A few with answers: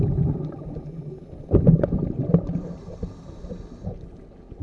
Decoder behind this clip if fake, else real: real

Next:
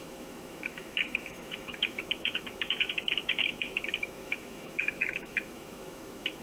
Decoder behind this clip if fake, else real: fake, autoencoder, DAC-VAE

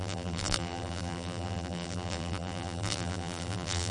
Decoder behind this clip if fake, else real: fake, vocoder, BigVGAN v2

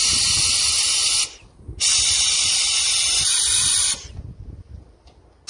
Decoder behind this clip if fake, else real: real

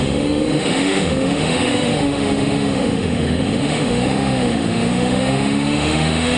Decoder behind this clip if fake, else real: fake, autoencoder, DAC-VAE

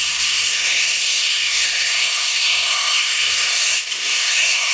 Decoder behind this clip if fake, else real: fake, codec, SNAC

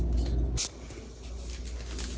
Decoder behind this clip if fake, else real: real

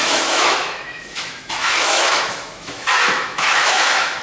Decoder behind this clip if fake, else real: fake, autoencoder, DAC-VAE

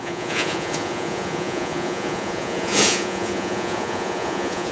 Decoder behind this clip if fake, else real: fake, vocoder, Vocos